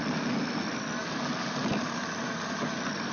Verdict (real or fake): real